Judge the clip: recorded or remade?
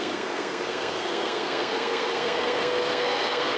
remade